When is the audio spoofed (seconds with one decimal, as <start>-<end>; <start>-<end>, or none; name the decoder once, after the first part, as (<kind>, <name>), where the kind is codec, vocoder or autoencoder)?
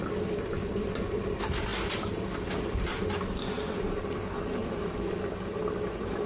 0.0-6.3 (vocoder, BigVGAN v2)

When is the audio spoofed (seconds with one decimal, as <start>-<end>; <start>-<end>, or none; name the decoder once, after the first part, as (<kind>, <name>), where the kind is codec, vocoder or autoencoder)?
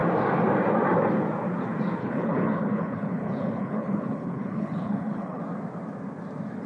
2.0-5.4 (codec, HILCodec)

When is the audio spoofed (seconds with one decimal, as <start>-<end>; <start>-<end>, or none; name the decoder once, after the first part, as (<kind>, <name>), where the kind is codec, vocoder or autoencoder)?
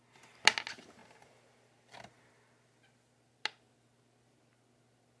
none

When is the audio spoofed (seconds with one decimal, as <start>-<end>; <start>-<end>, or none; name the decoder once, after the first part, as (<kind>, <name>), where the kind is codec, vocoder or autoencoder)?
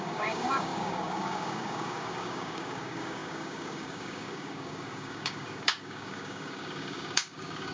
0.0-7.7 (codec, DAC)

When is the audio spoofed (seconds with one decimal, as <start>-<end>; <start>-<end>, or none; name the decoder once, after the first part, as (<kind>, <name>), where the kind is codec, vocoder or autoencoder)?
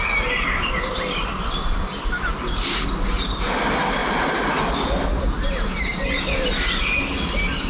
none